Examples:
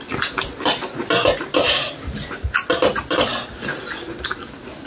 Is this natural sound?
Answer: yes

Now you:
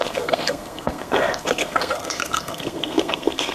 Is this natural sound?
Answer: no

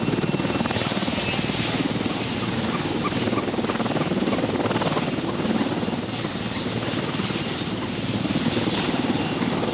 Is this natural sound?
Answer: yes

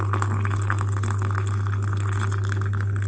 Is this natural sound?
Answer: yes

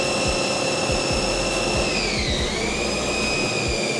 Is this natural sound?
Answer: yes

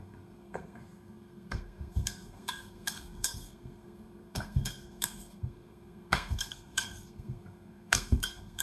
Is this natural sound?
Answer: no